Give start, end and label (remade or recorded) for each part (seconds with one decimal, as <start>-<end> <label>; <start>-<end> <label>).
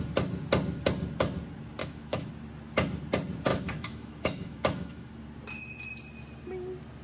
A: 0.0-1.8 recorded; 1.8-2.3 remade; 2.3-3.5 recorded; 3.5-5.1 remade; 5.1-7.0 recorded